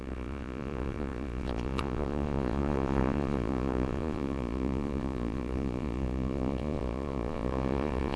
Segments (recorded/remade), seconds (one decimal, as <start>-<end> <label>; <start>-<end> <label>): 0.0-8.2 remade